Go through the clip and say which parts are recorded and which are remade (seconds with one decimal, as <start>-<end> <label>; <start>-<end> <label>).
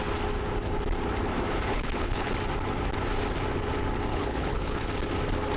0.0-1.7 recorded; 1.7-2.3 remade; 2.3-4.1 recorded; 4.1-4.9 remade; 4.9-5.6 recorded